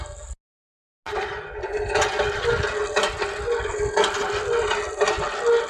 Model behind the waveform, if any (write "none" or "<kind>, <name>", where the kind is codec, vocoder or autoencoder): none